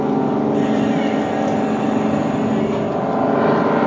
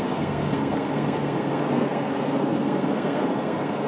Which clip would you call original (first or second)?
first